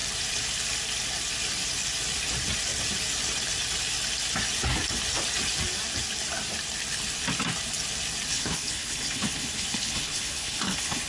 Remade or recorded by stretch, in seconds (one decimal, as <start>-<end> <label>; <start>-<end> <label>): 0.0-8.3 recorded; 8.3-11.1 remade